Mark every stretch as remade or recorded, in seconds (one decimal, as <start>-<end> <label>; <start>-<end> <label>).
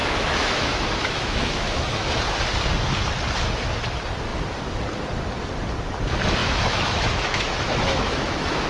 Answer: 0.0-2.2 remade; 2.2-6.4 recorded; 6.4-8.7 remade